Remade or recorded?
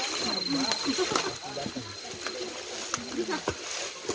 recorded